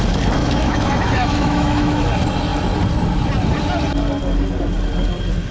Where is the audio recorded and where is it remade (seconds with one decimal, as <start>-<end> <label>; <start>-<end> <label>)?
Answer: 0.0-0.4 recorded; 0.4-2.0 remade; 2.0-5.5 recorded